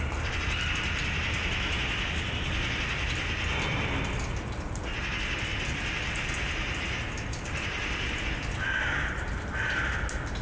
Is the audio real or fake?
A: real